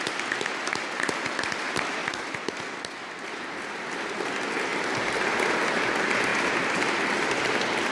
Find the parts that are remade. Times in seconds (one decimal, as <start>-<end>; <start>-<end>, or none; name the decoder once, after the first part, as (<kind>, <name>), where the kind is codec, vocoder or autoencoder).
none